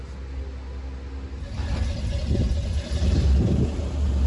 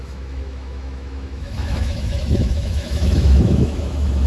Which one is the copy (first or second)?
second